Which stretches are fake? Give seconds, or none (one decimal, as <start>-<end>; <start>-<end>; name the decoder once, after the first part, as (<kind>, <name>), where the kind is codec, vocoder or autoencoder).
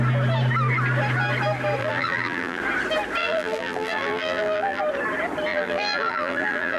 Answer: 1.8-2.6 (vocoder, BigVGAN v2); 3.2-4.8; 5.5-6.8